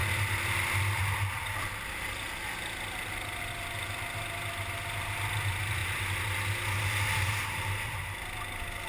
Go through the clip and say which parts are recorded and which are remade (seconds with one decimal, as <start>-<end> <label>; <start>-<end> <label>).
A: 0.0-8.9 recorded